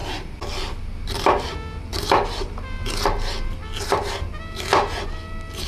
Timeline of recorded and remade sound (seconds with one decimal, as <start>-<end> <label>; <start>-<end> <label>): 0.0-5.7 recorded